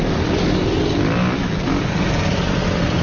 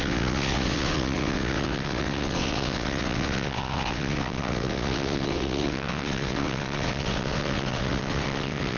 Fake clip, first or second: second